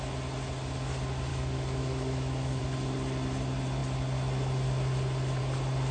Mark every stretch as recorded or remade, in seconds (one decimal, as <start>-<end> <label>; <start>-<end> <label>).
0.0-1.3 recorded; 1.3-2.6 remade; 2.6-5.9 recorded